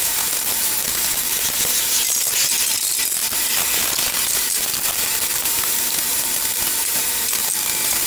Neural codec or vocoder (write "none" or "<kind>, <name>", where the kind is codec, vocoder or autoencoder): vocoder, BigVGAN v2